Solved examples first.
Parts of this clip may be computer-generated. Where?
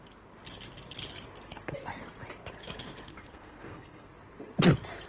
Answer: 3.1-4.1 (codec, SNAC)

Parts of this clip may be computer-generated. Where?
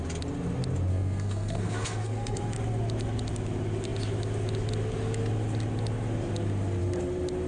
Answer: 0.9-2.4 (codec, SNAC)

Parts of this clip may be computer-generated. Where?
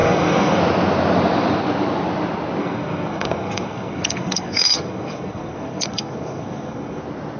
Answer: 0.0-0.6 (codec, SNAC); 2.6-7.0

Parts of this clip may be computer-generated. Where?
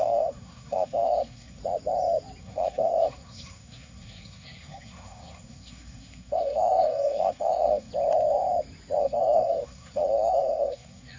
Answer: 0.0-1.6 (codec, SNAC); 2.4-7.9; 9.0-11.2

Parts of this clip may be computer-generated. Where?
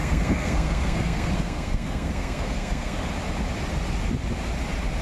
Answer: 0.0-3.0 (codec, SNAC)